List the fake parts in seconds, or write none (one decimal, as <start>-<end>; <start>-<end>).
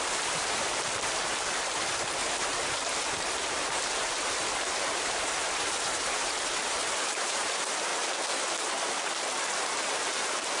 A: 0.0-7.9; 9.5-10.6